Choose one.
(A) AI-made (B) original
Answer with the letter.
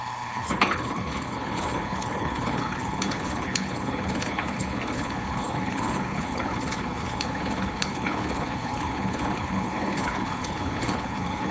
A